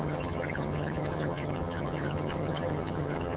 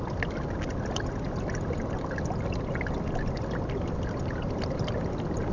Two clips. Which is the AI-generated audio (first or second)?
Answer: first